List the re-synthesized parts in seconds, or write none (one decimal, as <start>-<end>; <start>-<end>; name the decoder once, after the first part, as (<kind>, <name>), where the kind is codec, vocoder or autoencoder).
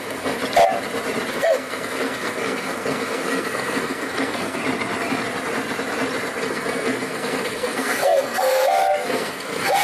0.0-0.4 (codec, SNAC); 1.3-4.6; 6.4-9.8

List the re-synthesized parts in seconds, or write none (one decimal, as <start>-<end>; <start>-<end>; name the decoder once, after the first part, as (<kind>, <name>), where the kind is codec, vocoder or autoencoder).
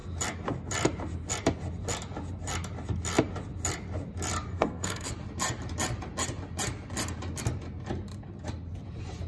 4.5-5.1 (codec, SNAC)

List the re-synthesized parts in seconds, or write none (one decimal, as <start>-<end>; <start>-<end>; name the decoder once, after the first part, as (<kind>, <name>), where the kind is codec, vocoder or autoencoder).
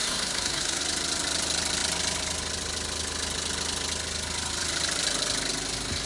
0.0-0.8 (codec, SNAC)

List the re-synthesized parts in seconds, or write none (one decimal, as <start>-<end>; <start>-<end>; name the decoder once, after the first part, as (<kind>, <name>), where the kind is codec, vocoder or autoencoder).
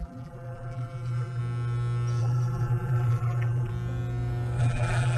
0.0-1.4 (vocoder, BigVGAN v2); 2.2-3.7; 4.6-5.2